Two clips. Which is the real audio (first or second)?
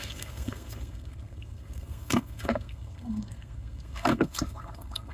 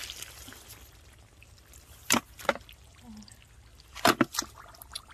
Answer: second